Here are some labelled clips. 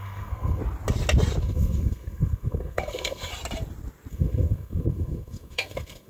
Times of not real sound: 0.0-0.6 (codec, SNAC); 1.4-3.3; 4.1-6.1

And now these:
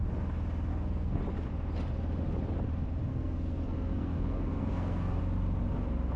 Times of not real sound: 0.7-1.2 (codec, SNAC); 3.1-5.2

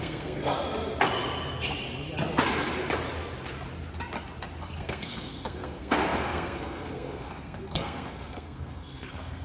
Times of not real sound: 0.0-0.5 (codec, SNAC); 4.8-9.4